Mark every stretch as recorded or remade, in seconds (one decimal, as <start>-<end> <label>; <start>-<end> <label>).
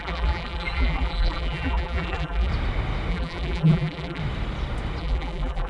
0.0-2.5 remade; 2.5-3.1 recorded; 3.1-4.2 remade; 4.2-5.0 recorded; 5.0-5.7 remade